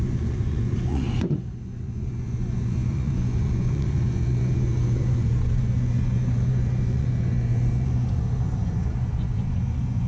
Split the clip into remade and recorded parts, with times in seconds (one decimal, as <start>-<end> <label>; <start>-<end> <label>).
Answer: 0.0-10.1 remade

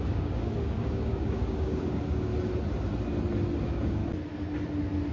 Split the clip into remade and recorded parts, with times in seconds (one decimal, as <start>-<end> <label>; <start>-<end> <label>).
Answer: 0.0-2.3 remade; 2.3-3.6 recorded; 3.6-4.0 remade; 4.0-5.1 recorded

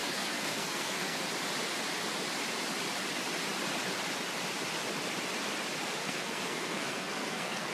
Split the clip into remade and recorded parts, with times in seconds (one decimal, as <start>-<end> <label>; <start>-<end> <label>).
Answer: 0.0-1.3 remade; 1.3-6.0 recorded; 6.0-7.7 remade

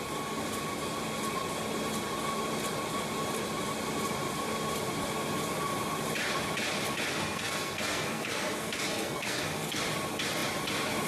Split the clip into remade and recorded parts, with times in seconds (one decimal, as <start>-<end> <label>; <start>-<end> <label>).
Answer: 0.0-7.1 recorded; 7.1-9.8 remade; 9.8-11.1 recorded

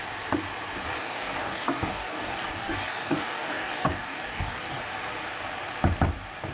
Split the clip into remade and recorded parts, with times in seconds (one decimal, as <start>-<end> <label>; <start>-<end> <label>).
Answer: 0.0-1.0 recorded; 1.0-4.8 remade; 4.8-6.5 recorded

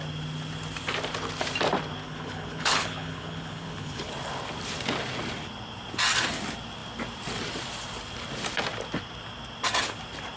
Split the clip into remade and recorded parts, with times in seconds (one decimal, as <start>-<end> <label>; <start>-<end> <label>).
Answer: 0.0-2.0 recorded; 2.0-4.1 remade; 4.1-10.4 recorded

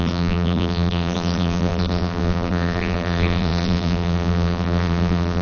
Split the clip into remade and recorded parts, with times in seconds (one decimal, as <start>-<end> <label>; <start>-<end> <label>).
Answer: 0.0-5.4 remade